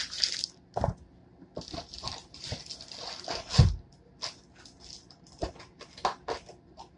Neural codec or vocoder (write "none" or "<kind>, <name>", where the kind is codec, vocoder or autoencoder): none